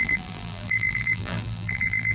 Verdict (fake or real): fake